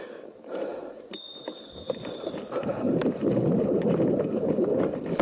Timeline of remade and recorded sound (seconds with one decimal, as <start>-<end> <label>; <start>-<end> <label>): 0.0-1.3 recorded; 1.3-4.0 remade; 4.0-5.2 recorded